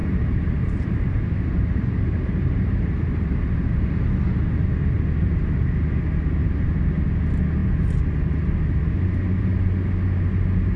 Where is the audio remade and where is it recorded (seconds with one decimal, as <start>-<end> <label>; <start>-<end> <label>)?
0.0-3.9 remade; 3.9-6.4 recorded; 6.4-7.1 remade; 7.1-10.8 recorded